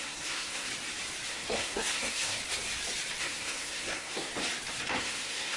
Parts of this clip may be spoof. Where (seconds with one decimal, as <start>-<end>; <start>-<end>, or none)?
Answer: 0.0-0.7; 1.3-2.4; 3.2-4.3; 5.0-5.6